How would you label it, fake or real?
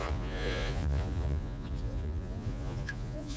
fake